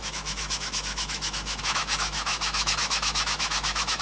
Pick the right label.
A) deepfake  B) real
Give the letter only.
A